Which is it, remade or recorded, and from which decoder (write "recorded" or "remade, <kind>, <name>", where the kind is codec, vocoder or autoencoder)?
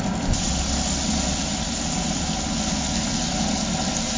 recorded